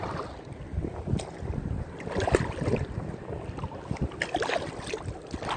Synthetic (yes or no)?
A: no